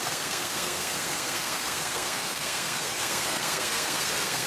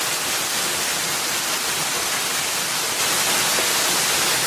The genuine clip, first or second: second